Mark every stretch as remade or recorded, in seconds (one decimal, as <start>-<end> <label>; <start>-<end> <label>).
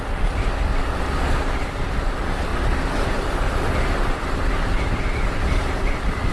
0.0-0.7 remade; 0.7-1.3 recorded; 1.3-2.5 remade; 2.5-5.2 recorded; 5.2-6.3 remade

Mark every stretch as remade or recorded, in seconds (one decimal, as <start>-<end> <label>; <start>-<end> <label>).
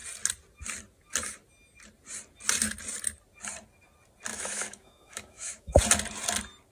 0.0-4.3 recorded; 4.3-5.8 remade; 5.8-6.7 recorded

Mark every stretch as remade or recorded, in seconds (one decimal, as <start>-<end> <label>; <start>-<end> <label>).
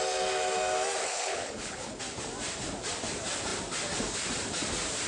0.0-1.0 recorded; 1.0-2.0 remade; 2.0-5.1 recorded